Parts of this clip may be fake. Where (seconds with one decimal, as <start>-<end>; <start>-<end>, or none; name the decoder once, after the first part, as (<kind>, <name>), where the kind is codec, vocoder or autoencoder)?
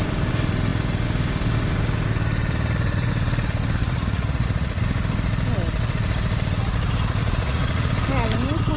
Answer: 3.8-4.8 (vocoder, Vocos); 7.2-7.9